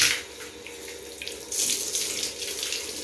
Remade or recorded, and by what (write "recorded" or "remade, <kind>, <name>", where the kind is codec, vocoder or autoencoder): recorded